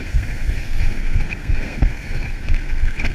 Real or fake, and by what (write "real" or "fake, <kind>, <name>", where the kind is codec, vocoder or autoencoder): fake, codec, SNAC